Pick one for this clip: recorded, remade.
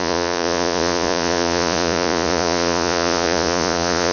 remade